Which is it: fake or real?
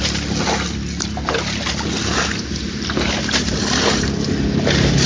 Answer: real